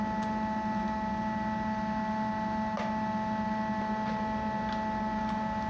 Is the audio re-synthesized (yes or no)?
no